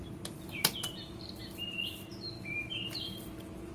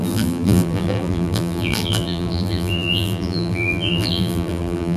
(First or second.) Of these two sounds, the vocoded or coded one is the second